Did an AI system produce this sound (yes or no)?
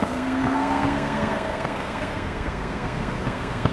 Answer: yes